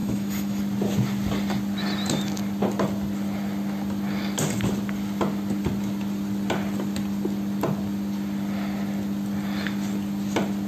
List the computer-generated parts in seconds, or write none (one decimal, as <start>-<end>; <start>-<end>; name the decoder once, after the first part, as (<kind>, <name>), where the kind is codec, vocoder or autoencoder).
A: 0.0-0.6 (autoencoder, DAC-VAE)